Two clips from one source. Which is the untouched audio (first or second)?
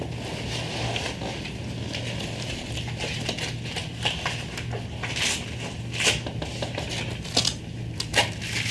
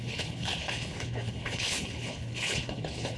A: first